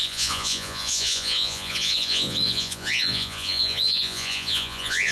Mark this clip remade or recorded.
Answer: remade